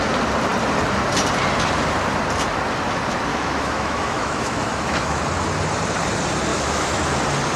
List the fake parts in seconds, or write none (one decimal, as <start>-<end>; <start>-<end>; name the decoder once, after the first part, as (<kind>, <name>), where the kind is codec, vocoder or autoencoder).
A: 3.3-5.2 (autoencoder, DAC-VAE); 6.5-7.0